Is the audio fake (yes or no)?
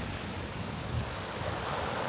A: yes